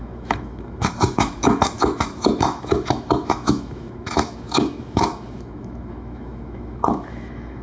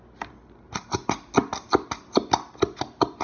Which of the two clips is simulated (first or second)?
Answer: first